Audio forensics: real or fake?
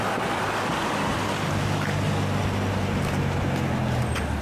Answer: real